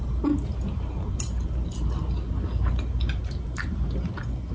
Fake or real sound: real